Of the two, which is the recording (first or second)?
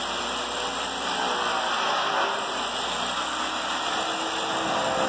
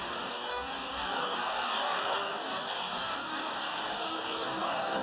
first